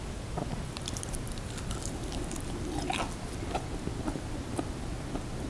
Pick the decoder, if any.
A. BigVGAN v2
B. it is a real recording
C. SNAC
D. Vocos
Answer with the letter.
B